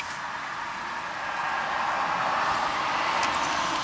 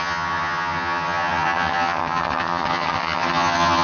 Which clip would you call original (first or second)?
first